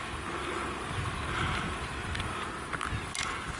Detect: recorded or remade recorded